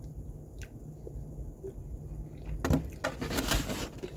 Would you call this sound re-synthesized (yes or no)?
no